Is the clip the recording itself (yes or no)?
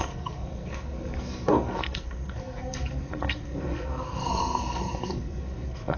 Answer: no